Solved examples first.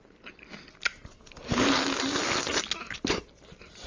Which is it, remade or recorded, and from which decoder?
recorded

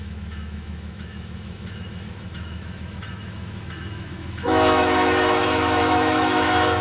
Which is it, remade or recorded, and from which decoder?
remade, autoencoder, DAC-VAE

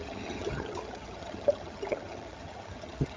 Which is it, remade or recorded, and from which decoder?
remade, vocoder, HiFi-GAN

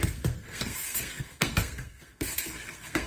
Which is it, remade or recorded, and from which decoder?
remade, codec, SNAC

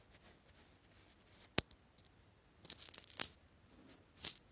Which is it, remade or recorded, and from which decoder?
recorded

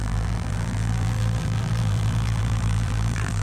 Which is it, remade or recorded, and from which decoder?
remade, vocoder, BigVGAN v2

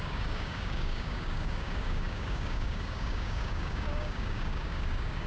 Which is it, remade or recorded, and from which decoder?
remade, codec, DAC